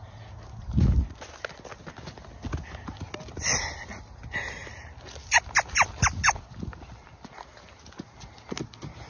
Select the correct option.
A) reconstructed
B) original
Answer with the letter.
B